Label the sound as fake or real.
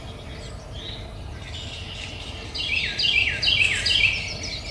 real